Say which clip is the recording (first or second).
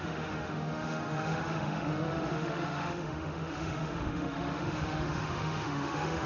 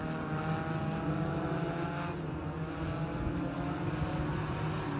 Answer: second